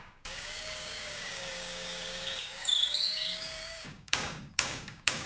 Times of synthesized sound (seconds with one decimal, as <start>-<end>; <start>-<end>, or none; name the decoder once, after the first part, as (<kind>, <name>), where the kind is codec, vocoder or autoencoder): 0.0-5.3 (codec, DAC)